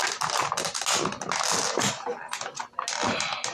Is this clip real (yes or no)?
yes